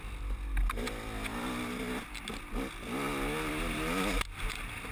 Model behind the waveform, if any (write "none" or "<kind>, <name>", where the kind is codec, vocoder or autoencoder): none